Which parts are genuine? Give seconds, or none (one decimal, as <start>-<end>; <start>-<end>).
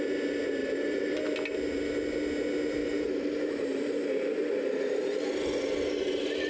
0.0-0.6; 1.2-2.8; 3.3-3.7